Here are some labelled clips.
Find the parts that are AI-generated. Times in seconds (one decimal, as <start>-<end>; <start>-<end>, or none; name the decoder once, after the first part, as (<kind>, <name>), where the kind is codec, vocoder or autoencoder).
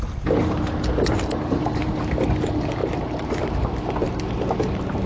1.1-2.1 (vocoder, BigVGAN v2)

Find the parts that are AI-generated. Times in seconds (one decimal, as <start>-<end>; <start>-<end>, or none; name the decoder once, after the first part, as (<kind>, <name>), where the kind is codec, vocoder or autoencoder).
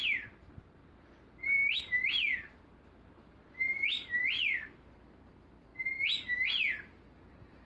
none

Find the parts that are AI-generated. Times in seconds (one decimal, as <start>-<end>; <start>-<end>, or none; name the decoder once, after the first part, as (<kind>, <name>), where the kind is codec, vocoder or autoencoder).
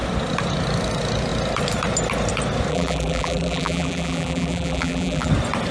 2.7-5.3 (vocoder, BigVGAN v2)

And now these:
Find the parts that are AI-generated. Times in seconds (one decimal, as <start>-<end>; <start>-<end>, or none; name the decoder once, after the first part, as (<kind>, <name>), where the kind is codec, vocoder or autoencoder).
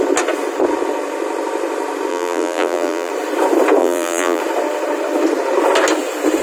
2.1-3.1 (vocoder, BigVGAN v2); 3.8-4.4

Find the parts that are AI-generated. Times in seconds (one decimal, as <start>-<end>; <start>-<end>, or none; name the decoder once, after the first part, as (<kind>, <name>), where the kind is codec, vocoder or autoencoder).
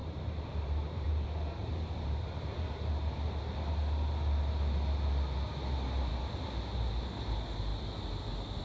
0.0-1.1 (vocoder, BigVGAN v2); 1.6-2.6